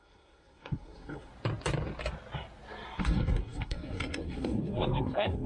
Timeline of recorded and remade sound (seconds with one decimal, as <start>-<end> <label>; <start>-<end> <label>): 0.0-1.3 remade; 1.3-3.0 recorded; 3.0-5.5 remade